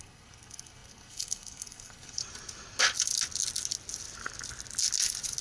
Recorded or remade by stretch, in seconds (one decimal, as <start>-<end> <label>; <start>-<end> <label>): 0.0-2.2 remade; 2.2-5.4 recorded